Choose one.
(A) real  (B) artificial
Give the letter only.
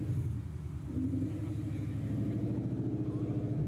A